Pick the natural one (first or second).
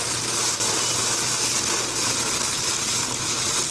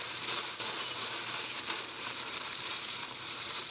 first